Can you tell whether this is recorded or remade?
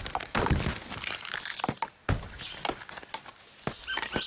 recorded